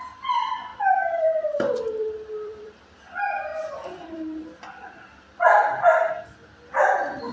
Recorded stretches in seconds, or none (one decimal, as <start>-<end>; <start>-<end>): 0.0-0.7; 2.8-3.5; 6.1-7.3

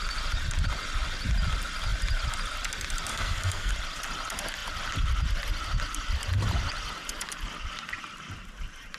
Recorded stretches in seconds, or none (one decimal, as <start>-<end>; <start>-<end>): 0.0-3.1; 3.7-9.0

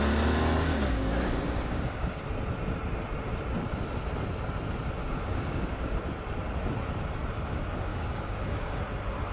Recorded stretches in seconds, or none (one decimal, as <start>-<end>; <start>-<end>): 0.0-0.7; 2.2-5.0; 5.9-7.9; 8.8-9.3

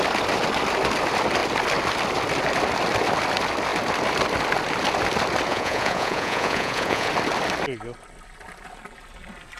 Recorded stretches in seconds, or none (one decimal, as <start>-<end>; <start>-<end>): 0.0-5.5; 7.1-9.6